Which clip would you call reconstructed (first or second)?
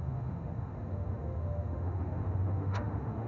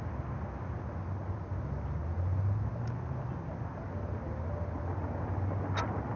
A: first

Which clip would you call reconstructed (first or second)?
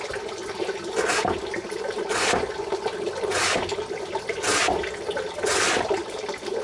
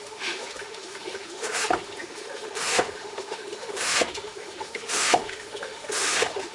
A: second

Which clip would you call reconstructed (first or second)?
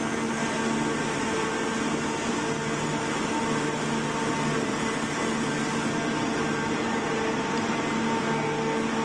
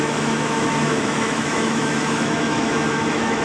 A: second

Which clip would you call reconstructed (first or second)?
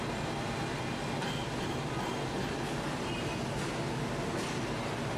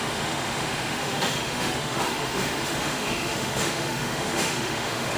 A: second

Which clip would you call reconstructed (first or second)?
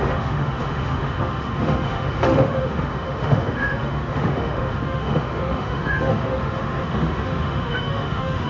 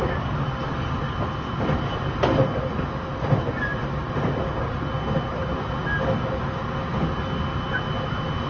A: first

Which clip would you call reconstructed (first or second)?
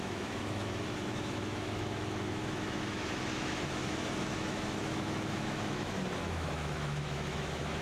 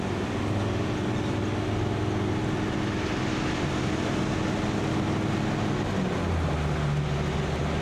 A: first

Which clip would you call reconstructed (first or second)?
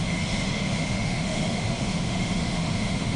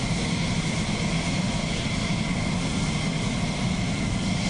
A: first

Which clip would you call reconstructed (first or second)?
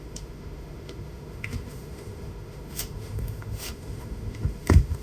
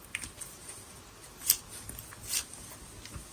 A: first